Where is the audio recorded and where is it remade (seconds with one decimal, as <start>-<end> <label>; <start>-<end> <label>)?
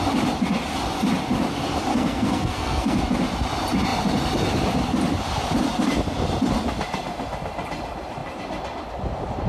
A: 0.0-1.9 recorded; 1.9-3.0 remade; 3.0-9.5 recorded